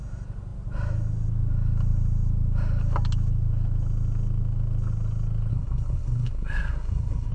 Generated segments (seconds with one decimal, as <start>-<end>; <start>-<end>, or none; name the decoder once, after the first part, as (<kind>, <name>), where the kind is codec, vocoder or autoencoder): 5.5-7.3 (codec, SNAC)